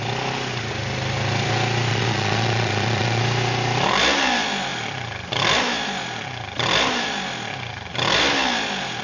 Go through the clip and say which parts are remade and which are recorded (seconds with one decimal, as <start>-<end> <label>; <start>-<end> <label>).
0.0-1.9 recorded; 1.9-3.2 remade; 3.2-9.0 recorded